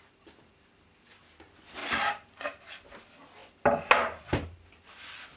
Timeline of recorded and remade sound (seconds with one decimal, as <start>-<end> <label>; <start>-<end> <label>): 0.0-1.8 recorded; 1.8-2.9 remade; 2.9-3.4 recorded; 3.4-5.4 remade